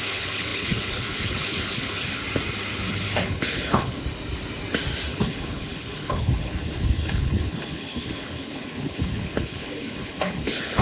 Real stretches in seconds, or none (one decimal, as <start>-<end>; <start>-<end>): 2.2-2.9; 4.0-5.1